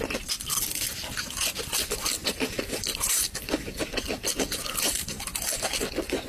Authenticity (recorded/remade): remade